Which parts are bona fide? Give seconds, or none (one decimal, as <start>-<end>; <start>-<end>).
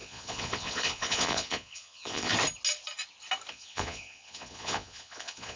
2.3-3.5